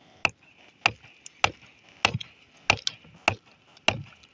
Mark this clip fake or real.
real